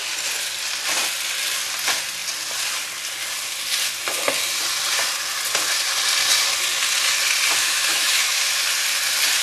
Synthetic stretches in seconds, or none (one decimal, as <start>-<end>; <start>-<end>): 7.6-8.4